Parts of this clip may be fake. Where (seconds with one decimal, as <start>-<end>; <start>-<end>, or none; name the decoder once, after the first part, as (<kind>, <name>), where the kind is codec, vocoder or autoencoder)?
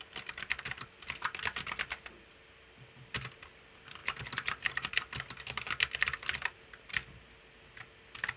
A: none